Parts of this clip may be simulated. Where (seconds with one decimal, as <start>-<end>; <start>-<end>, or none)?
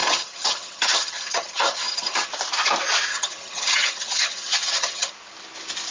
0.0-2.3; 3.1-5.1